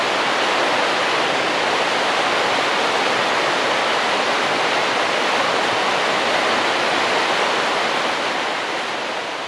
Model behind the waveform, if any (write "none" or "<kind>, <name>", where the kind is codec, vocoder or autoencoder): none